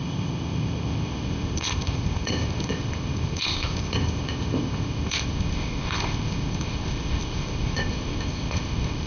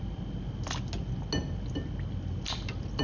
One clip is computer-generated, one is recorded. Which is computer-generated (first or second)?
first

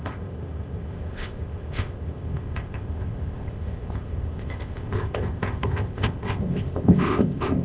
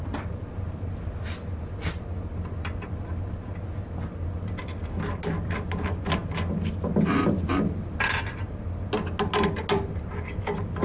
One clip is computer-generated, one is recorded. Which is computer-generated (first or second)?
first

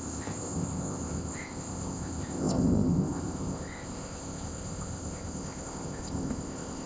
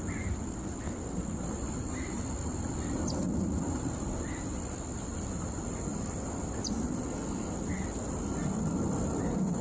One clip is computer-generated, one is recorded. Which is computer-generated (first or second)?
first